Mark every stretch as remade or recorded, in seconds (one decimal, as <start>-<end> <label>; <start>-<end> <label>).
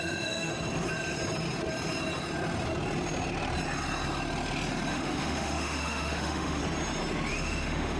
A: 0.0-0.5 remade; 0.5-4.9 recorded; 4.9-6.6 remade; 6.6-7.3 recorded; 7.3-8.0 remade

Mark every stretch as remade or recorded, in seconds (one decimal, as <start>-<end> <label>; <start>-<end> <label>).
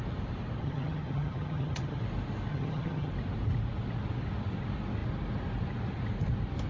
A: 0.0-0.6 recorded; 0.6-2.0 remade; 2.0-2.5 recorded; 2.5-3.1 remade; 3.1-6.7 recorded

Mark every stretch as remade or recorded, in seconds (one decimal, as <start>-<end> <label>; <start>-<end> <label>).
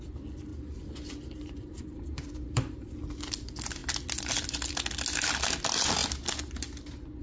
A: 0.0-0.5 recorded; 0.5-2.9 remade; 2.9-7.2 recorded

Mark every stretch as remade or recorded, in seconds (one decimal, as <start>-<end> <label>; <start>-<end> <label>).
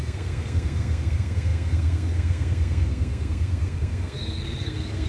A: 0.0-5.1 remade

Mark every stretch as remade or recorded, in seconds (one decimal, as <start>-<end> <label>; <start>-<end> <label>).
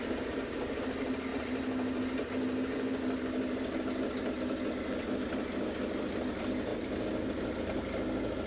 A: 0.0-8.5 recorded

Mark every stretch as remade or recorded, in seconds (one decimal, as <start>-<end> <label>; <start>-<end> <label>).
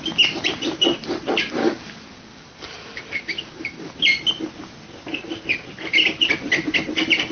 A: 0.0-1.6 recorded; 1.6-3.9 remade; 3.9-7.3 recorded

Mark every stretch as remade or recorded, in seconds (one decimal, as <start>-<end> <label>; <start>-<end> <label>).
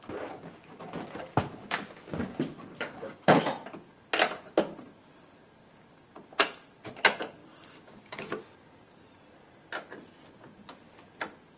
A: 0.0-2.7 recorded; 2.7-3.4 remade; 3.4-7.4 recorded; 7.4-8.4 remade; 8.4-11.6 recorded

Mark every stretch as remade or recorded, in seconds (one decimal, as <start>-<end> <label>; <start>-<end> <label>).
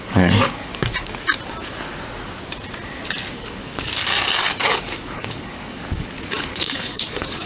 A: 0.0-0.7 remade; 0.7-3.3 recorded; 3.3-4.1 remade; 4.1-4.6 recorded; 4.6-7.5 remade